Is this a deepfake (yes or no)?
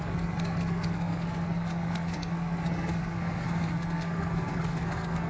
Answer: yes